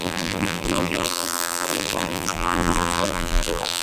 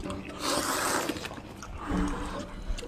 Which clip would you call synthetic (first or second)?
first